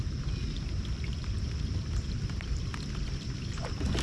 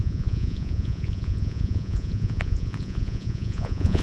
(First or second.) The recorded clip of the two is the first